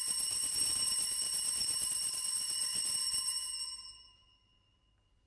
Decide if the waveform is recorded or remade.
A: remade